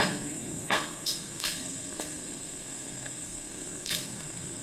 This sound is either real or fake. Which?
fake